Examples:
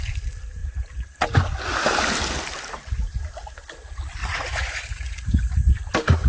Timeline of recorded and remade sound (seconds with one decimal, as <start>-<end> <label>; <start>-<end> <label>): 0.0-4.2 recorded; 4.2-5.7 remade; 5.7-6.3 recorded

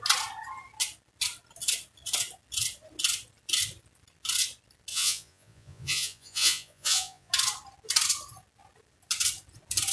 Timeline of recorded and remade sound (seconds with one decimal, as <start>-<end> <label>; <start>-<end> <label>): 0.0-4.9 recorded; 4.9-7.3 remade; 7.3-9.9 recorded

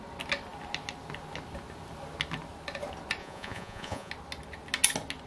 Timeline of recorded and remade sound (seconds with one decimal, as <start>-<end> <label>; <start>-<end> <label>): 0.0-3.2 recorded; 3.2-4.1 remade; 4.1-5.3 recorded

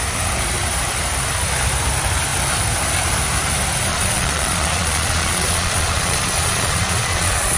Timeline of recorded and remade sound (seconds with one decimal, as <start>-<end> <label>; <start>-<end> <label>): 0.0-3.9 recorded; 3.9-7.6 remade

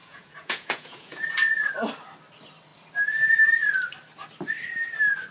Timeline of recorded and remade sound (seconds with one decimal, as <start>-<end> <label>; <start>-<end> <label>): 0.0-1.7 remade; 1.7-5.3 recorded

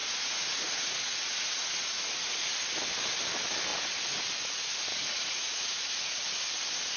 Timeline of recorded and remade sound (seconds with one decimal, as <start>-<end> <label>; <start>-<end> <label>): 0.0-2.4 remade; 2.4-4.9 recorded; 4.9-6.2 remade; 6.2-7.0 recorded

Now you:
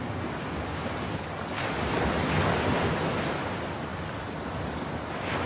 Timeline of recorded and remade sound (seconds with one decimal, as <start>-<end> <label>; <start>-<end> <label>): 0.0-5.5 recorded

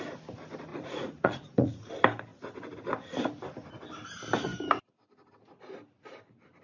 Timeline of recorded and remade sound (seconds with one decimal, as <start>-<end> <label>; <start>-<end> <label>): 0.0-0.7 recorded; 0.7-1.9 remade; 1.9-6.6 recorded